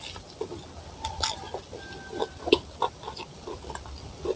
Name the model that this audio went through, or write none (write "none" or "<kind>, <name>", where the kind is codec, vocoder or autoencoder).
none